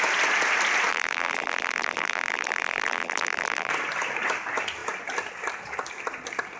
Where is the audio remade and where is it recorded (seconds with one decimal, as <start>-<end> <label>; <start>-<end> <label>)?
0.0-0.9 recorded; 0.9-3.7 remade; 3.7-6.6 recorded